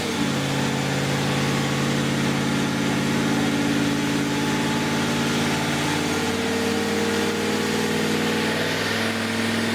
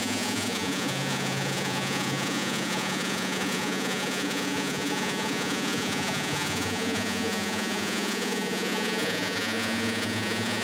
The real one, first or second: first